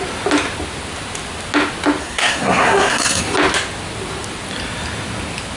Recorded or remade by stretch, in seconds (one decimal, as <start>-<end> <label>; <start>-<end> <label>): 0.0-2.0 recorded; 2.0-3.2 remade; 3.2-5.6 recorded